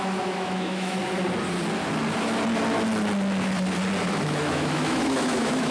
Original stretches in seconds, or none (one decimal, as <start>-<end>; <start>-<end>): 1.0-4.2